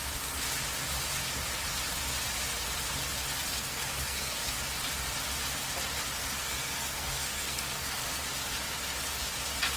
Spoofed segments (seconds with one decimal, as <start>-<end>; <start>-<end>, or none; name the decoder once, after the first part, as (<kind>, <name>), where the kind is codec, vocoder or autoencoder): 3.5-4.5 (codec, SNAC); 6.2-8.2